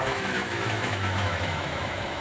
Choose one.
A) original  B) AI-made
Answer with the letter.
B